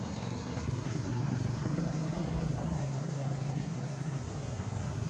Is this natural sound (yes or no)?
no